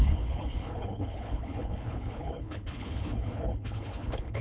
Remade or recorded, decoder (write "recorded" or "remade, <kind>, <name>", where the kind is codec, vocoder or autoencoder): remade, codec, HILCodec